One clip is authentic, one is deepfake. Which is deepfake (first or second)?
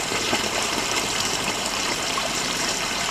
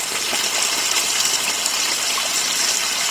first